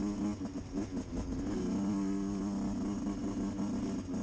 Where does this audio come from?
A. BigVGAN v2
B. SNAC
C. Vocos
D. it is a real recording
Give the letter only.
D